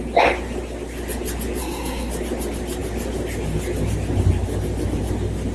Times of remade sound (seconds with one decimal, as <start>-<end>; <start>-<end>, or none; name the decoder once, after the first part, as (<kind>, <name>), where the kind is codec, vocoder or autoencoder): 1.6-2.1 (codec, SNAC)